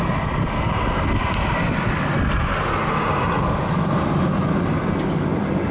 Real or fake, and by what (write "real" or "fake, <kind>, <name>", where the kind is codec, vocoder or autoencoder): real